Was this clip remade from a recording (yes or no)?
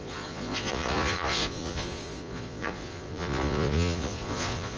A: yes